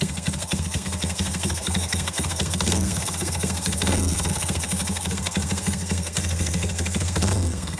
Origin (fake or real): fake